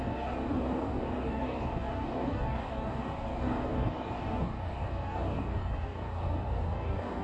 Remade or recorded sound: remade